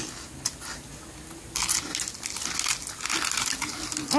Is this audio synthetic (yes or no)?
no